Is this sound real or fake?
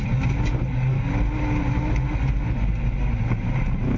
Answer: real